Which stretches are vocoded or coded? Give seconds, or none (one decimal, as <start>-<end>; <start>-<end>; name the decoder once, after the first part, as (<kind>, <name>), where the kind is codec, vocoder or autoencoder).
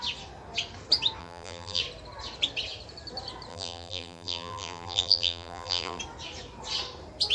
1.2-1.8 (vocoder, BigVGAN v2); 3.5-6.0